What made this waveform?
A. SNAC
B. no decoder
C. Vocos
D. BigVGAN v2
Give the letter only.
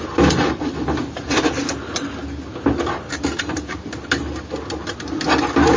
B